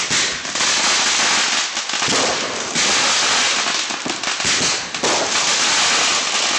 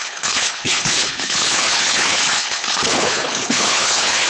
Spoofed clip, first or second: second